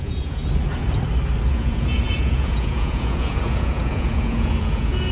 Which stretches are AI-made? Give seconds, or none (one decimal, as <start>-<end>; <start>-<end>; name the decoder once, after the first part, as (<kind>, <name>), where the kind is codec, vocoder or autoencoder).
0.0-0.4 (vocoder, Vocos); 1.5-5.1